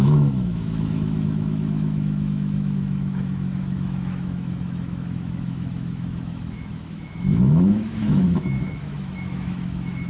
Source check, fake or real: fake